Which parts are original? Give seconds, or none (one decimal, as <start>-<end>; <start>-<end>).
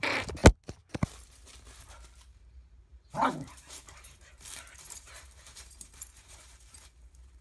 0.4-2.3